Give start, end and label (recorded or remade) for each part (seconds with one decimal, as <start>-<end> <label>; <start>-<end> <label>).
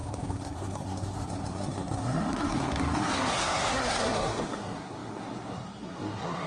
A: 0.0-6.5 remade